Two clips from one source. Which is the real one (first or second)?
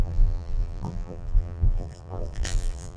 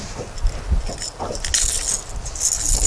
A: second